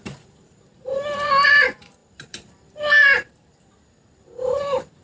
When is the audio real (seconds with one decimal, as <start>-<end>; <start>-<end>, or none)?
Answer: none

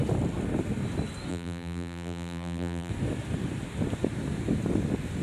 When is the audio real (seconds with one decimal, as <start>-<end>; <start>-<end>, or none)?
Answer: 0.0-1.3; 2.9-5.2

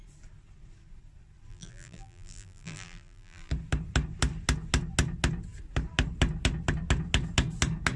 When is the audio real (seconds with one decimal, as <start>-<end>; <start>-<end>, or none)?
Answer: 0.0-1.5; 3.5-8.0